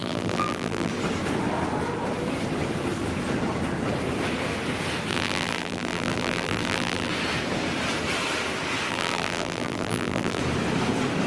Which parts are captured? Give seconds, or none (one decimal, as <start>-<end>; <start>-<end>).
0.9-5.1; 7.1-8.9; 10.4-11.3